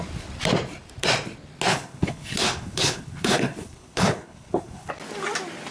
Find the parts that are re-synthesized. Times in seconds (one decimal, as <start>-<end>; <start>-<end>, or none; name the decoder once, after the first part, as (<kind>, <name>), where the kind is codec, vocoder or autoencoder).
1.7-4.9 (codec, HILCodec)